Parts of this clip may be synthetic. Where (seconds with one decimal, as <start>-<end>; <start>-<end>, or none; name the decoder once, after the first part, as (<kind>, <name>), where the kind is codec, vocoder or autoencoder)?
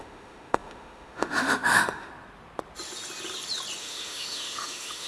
0.0-2.1 (autoencoder, DAC-VAE); 3.8-5.1